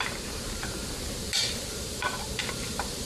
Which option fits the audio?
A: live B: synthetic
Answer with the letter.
B